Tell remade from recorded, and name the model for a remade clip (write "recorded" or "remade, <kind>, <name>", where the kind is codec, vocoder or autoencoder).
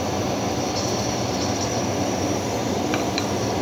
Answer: recorded